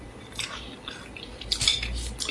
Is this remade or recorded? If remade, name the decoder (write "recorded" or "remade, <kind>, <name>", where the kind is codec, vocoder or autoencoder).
recorded